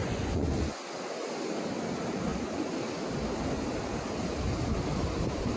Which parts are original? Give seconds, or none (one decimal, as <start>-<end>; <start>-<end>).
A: 0.8-5.6